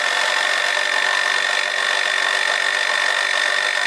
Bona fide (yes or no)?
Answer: yes